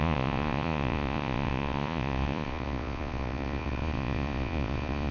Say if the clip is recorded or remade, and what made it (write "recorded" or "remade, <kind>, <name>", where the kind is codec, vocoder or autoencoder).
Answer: remade, vocoder, Vocos